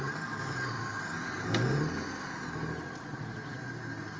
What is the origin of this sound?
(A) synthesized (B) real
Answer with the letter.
B